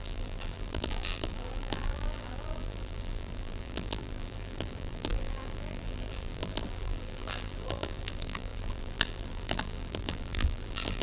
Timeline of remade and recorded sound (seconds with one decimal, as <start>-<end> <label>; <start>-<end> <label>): 0.0-11.0 remade